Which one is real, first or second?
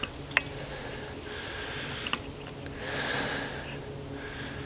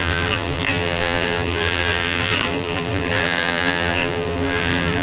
first